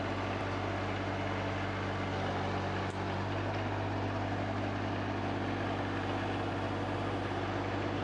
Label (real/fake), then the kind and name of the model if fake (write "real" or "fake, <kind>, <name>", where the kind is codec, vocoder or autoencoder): real